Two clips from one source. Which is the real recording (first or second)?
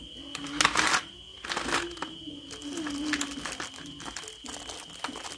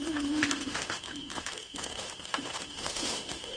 first